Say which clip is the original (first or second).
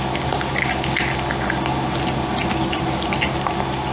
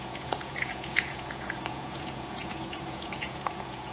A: first